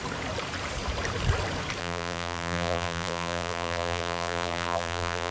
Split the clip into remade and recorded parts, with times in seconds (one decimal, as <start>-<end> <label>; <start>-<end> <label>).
0.0-1.8 recorded; 1.8-5.3 remade